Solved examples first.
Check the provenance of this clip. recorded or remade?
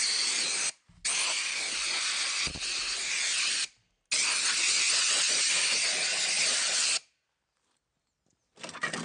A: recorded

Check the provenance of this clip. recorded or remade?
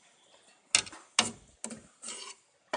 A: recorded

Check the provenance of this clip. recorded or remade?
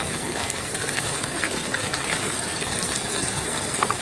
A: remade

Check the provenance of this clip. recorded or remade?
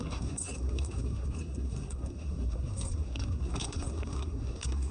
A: remade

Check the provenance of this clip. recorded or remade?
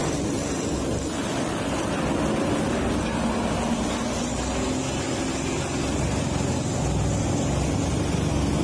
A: recorded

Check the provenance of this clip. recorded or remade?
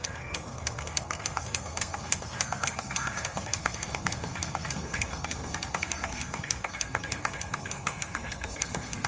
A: remade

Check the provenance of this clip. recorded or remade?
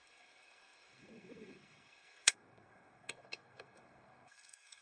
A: remade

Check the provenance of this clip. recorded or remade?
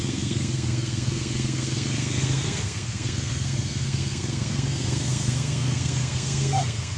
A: remade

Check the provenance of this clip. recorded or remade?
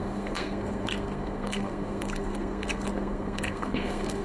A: remade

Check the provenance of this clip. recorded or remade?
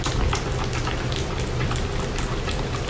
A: recorded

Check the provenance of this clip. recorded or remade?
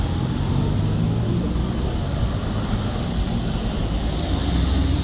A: recorded